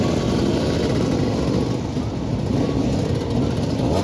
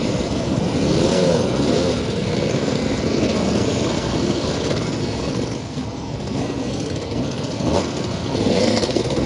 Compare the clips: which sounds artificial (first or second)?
second